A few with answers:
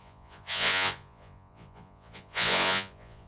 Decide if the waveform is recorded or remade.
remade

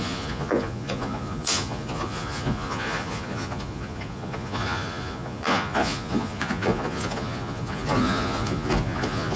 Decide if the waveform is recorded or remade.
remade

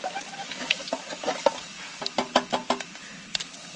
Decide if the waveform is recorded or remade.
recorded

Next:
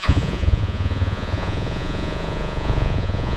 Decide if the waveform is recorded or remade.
remade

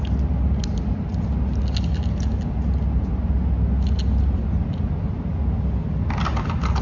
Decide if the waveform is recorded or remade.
recorded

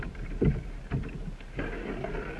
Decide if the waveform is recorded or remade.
recorded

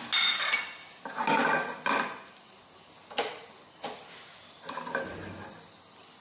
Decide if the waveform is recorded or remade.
recorded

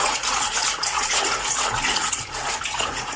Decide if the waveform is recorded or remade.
remade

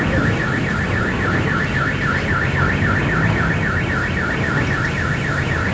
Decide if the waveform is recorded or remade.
recorded